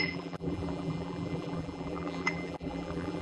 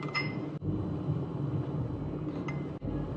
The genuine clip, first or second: second